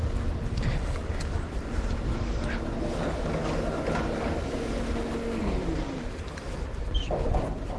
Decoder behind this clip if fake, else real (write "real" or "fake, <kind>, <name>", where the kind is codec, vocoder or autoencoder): real